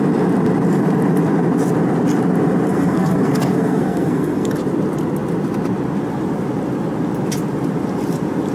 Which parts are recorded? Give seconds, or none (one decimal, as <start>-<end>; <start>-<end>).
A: 0.0-2.7; 4.5-8.5